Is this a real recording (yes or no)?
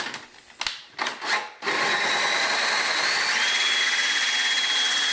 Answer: yes